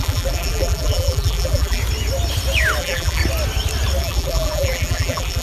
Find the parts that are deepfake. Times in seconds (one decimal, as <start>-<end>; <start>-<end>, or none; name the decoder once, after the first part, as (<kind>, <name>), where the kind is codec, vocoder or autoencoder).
0.0-1.8 (vocoder, BigVGAN v2); 2.8-3.2; 4.0-5.4